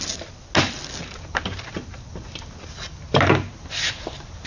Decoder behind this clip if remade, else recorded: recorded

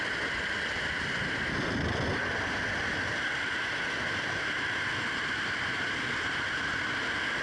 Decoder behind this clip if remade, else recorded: recorded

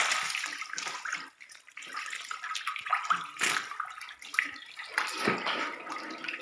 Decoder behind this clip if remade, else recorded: recorded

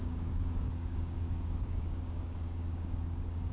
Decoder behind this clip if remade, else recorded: remade, codec, DAC